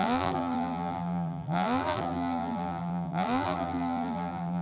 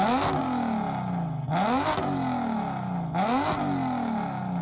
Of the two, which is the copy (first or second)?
first